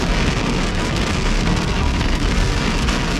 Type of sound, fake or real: fake